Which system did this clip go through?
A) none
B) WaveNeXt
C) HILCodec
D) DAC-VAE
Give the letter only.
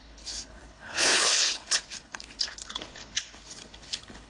C